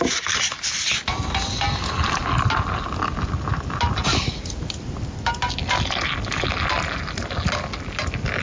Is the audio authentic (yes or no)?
yes